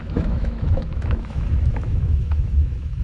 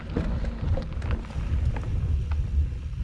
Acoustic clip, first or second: second